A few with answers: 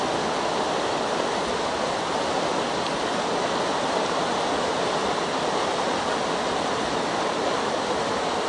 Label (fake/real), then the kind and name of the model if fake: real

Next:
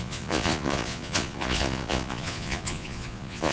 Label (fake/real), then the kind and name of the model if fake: fake, vocoder, Vocos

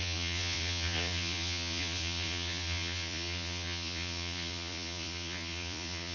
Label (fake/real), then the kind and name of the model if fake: fake, vocoder, Vocos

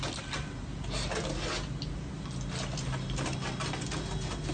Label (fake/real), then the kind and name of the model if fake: real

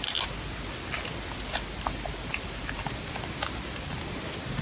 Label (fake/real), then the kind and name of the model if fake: real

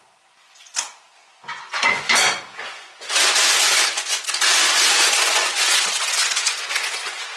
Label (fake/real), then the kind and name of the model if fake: fake, vocoder, Vocos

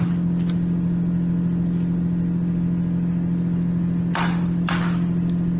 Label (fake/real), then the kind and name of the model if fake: real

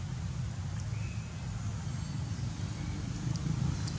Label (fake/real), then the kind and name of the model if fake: real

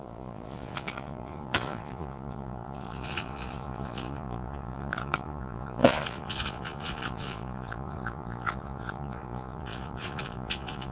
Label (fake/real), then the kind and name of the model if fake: fake, vocoder, Vocos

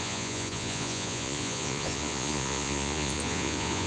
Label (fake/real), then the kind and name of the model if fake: fake, vocoder, Vocos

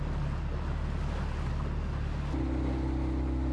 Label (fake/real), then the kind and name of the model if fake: real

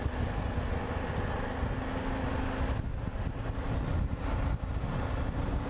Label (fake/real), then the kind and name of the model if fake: real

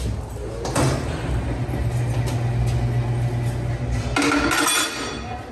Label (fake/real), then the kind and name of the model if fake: real